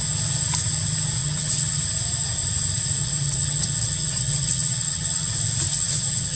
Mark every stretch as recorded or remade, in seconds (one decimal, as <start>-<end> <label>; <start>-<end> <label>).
0.0-1.2 recorded; 1.2-1.8 remade; 1.8-3.0 recorded; 3.0-5.3 remade; 5.3-5.7 recorded; 5.7-6.4 remade